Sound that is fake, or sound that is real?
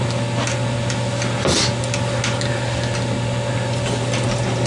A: real